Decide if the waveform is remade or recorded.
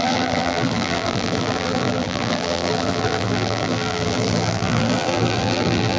remade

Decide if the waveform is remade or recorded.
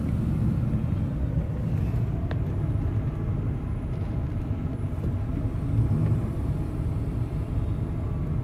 recorded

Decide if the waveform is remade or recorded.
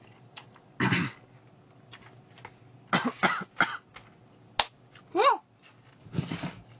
recorded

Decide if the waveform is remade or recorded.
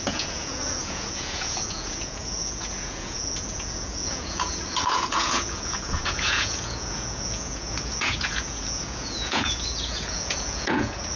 remade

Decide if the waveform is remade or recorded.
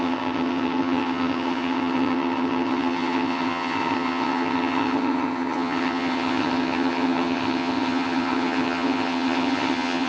remade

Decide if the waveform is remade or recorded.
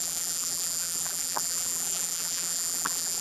remade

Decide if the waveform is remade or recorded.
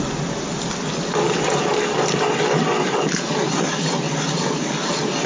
recorded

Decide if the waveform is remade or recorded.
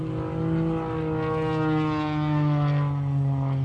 recorded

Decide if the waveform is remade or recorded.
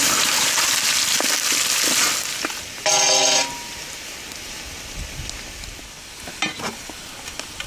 recorded